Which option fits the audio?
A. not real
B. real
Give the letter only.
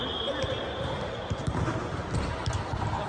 B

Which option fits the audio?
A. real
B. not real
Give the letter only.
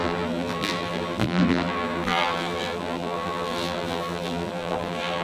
B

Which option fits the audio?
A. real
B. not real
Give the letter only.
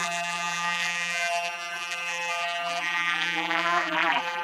B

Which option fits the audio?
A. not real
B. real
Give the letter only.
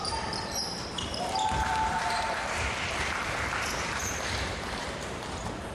A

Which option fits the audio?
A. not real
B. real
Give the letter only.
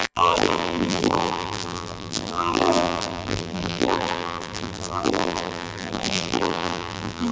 A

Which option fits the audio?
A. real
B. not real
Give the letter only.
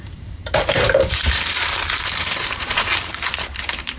B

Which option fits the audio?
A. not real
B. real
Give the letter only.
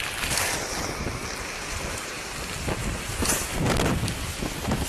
B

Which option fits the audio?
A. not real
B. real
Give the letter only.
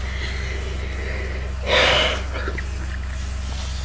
B